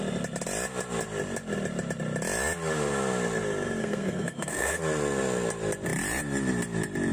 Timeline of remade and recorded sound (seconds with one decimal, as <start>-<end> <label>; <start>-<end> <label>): 0.0-3.8 recorded; 3.8-4.8 remade; 4.8-7.1 recorded